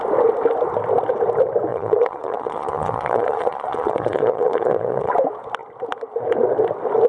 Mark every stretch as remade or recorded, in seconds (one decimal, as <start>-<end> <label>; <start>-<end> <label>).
0.0-1.7 recorded; 1.7-5.1 remade; 5.1-7.1 recorded